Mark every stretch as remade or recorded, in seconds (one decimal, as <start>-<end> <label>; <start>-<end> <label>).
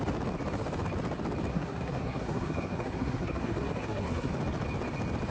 0.0-1.5 recorded; 1.5-4.3 remade; 4.3-5.3 recorded